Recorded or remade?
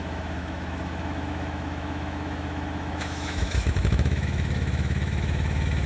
remade